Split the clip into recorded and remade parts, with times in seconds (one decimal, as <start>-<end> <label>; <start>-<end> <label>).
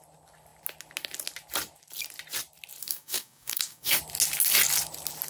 0.0-2.8 recorded; 2.8-4.0 remade; 4.0-5.3 recorded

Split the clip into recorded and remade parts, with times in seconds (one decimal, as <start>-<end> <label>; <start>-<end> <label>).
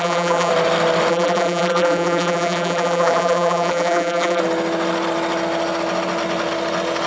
0.0-0.5 remade; 0.5-1.1 recorded; 1.1-4.4 remade; 4.4-7.1 recorded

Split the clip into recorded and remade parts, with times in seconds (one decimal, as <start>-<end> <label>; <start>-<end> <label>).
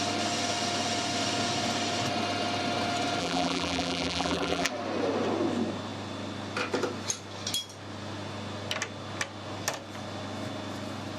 0.0-3.2 recorded; 3.2-4.7 remade; 4.7-11.2 recorded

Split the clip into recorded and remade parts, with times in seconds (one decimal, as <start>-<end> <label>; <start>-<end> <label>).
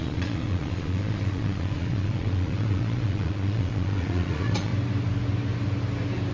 0.0-4.7 remade; 4.7-6.3 recorded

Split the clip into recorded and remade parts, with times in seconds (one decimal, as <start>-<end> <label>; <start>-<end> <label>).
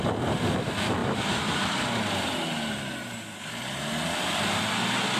0.0-5.2 recorded